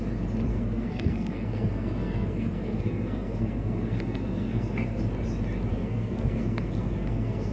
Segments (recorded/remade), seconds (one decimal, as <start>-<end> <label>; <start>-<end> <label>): 0.0-0.5 recorded; 0.5-5.0 remade; 5.0-5.7 recorded; 5.7-7.5 remade